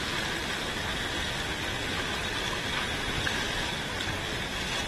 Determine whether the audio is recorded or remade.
recorded